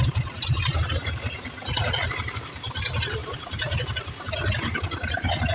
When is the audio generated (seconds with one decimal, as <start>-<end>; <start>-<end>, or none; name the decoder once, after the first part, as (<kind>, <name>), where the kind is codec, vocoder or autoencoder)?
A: none